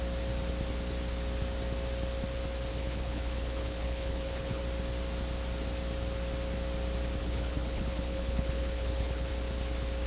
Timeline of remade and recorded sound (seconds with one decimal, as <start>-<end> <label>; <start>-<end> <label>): 0.0-2.7 recorded; 2.7-4.6 remade; 4.6-7.2 recorded; 7.2-9.3 remade; 9.3-10.1 recorded